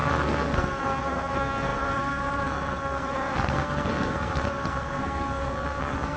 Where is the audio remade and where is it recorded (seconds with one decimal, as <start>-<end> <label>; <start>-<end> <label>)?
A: 0.0-6.2 remade